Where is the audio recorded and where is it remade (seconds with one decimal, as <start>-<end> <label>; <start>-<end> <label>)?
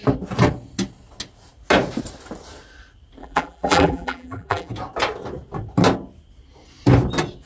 0.0-3.2 recorded; 3.2-4.7 remade; 4.7-7.5 recorded